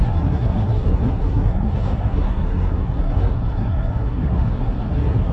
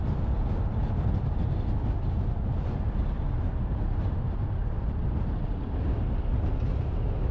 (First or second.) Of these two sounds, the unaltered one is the second